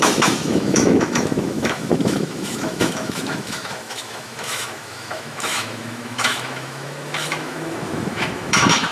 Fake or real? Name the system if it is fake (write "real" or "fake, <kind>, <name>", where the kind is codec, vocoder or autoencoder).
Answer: fake, autoencoder, DAC-VAE